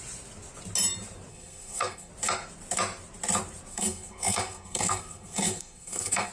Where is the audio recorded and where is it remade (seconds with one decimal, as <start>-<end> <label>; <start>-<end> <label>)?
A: 0.0-1.3 recorded; 1.3-2.1 remade; 2.1-3.7 recorded; 3.7-6.3 remade